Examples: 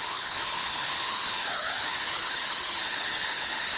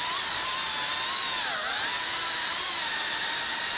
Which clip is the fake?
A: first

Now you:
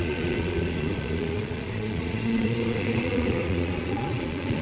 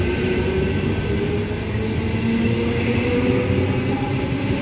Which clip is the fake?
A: first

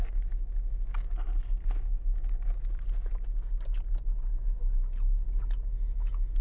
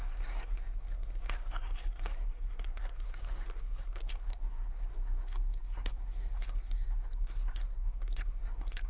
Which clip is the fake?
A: second